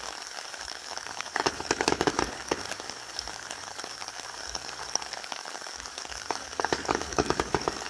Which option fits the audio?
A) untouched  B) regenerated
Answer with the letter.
B